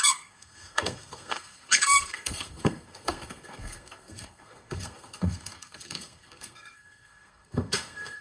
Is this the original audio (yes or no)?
no